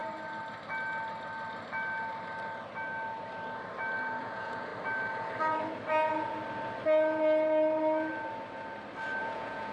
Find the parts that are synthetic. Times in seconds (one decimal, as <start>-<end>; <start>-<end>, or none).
4.2-4.7; 9.2-9.7